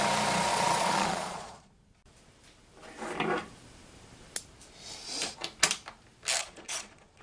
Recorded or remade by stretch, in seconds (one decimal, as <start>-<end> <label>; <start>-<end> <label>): 0.0-0.5 recorded; 0.5-1.7 remade; 1.7-6.4 recorded; 6.4-7.2 remade